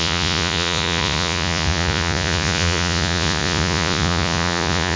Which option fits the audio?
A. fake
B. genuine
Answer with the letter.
A